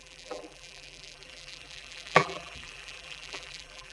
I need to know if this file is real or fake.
fake